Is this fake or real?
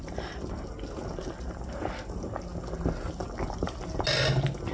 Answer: real